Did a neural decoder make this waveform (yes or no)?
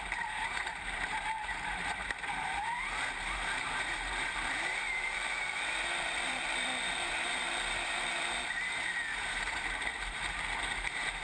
yes